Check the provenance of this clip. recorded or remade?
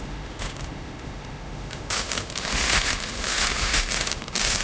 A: remade